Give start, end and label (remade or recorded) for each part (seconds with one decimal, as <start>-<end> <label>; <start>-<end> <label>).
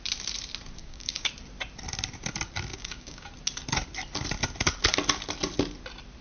0.0-0.8 recorded; 0.8-1.3 remade; 1.3-2.7 recorded; 2.7-3.3 remade; 3.3-6.2 recorded